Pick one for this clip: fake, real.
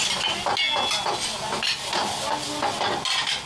real